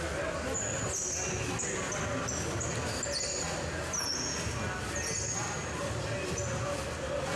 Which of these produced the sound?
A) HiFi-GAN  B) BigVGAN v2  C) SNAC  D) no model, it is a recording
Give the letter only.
D